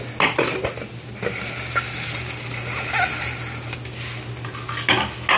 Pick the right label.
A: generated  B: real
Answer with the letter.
B